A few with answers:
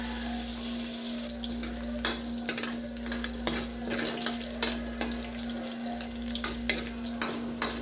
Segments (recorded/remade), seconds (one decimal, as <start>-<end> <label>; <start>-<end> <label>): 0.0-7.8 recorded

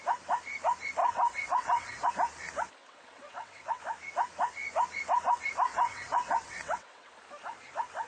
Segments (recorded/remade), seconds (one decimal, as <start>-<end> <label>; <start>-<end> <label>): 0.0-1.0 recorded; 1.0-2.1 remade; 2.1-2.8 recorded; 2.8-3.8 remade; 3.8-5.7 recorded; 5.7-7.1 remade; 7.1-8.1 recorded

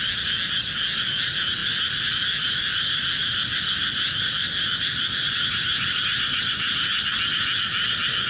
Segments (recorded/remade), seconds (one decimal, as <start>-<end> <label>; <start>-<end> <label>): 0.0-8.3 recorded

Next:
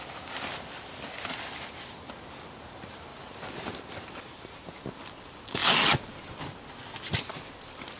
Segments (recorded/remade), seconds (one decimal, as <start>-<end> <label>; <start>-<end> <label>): 0.0-3.1 recorded; 3.1-4.1 remade; 4.1-8.0 recorded

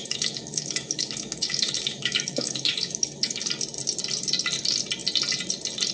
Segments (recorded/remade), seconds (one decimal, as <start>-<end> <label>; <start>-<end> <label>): 0.0-3.5 remade; 3.5-5.9 recorded

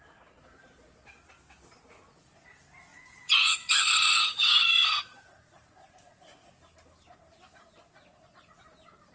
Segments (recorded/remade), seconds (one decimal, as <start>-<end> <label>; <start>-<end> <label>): 0.0-2.9 recorded; 2.9-6.5 remade; 6.5-9.1 recorded

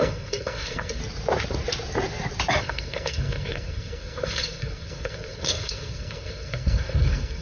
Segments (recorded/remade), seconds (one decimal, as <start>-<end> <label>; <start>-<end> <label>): 0.0-1.0 remade; 1.0-2.6 recorded; 2.6-7.4 remade